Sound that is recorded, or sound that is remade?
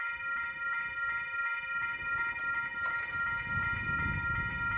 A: recorded